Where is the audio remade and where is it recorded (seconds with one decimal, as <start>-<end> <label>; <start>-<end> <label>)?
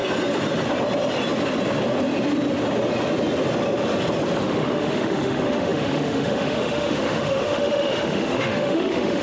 0.0-4.4 recorded; 4.4-9.2 remade